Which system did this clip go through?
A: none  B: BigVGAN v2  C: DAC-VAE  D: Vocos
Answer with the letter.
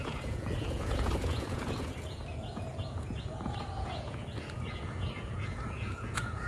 D